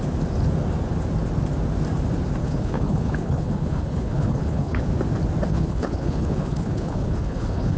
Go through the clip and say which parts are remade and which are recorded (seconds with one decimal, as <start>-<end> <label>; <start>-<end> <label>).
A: 0.0-2.4 recorded; 2.4-4.8 remade; 4.8-5.5 recorded; 5.5-7.8 remade